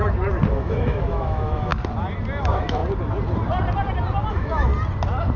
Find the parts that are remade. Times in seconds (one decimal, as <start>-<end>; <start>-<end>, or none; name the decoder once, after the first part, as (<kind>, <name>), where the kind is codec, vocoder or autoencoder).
0.5-1.7 (autoencoder, DAC-VAE); 2.4-2.8; 4.3-4.7